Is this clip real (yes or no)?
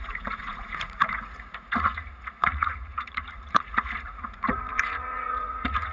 no